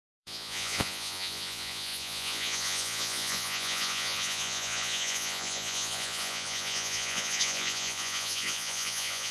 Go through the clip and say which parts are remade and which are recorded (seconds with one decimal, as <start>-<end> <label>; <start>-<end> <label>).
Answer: 0.0-9.3 remade